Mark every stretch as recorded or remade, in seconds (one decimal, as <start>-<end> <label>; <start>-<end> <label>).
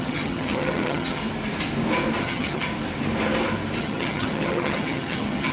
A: 0.0-1.2 remade; 1.2-2.2 recorded; 2.2-2.7 remade; 2.7-3.8 recorded; 3.8-5.5 remade